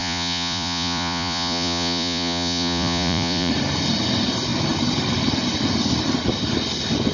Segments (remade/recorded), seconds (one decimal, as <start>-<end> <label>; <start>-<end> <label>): 0.0-3.5 remade; 3.5-7.1 recorded